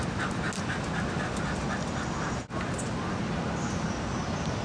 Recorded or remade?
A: recorded